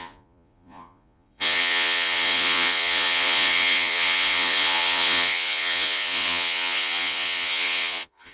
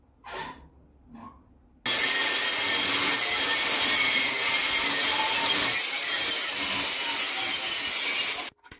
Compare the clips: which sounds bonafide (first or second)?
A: second